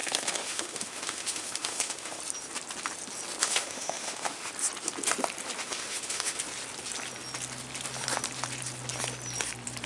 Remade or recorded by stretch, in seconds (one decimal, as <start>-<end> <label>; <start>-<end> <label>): 0.0-2.2 remade; 2.2-3.4 recorded; 3.4-4.5 remade; 4.5-5.6 recorded; 5.6-6.4 remade; 6.4-9.9 recorded